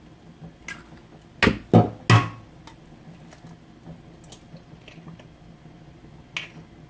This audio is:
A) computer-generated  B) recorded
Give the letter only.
B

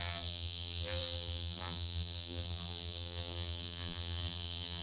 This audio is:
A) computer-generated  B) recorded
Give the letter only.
A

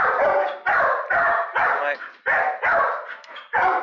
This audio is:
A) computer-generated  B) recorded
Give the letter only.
A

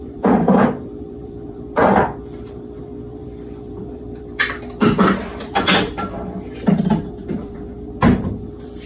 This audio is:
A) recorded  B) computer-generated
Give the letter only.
B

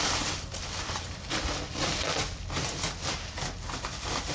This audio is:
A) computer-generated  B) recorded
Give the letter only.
B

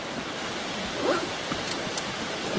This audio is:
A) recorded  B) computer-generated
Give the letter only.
A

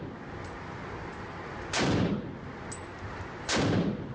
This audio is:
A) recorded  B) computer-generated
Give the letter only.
A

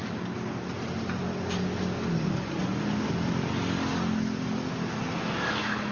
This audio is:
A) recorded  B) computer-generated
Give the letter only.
A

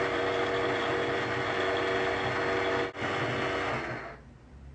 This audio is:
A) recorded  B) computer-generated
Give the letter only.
A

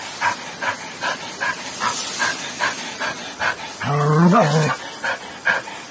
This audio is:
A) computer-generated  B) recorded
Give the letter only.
B